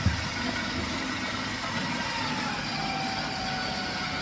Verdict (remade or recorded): recorded